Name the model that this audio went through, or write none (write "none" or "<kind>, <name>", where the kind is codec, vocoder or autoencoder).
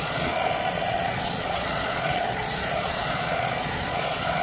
vocoder, Vocos